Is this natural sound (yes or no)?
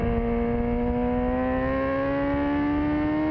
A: yes